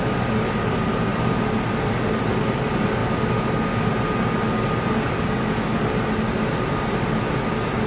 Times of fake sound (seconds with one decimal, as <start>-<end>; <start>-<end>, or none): 1.1-2.3